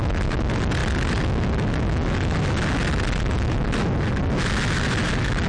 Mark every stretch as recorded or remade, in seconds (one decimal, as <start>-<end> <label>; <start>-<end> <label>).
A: 0.0-5.5 recorded